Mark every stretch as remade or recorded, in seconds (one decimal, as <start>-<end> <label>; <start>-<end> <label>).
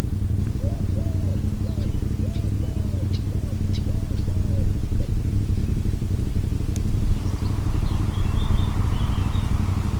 0.0-1.3 remade; 1.3-4.5 recorded; 4.5-10.0 remade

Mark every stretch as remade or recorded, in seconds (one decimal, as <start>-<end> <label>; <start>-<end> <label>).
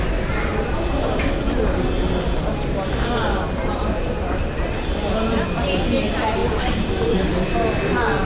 0.0-6.4 recorded; 6.4-7.3 remade; 7.3-8.2 recorded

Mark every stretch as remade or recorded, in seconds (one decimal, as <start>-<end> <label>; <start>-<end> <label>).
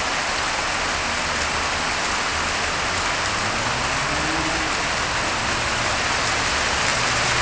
0.0-7.4 recorded